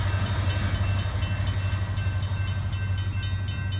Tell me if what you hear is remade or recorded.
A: recorded